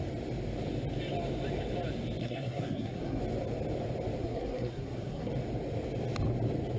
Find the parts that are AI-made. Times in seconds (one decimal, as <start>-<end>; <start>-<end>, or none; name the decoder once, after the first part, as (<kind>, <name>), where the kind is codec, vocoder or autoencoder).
2.2-3.2 (codec, SNAC); 4.2-5.3